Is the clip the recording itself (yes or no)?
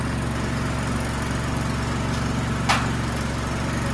yes